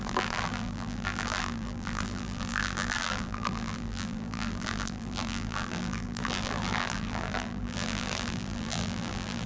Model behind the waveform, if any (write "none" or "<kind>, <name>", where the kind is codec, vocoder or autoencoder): vocoder, BigVGAN v2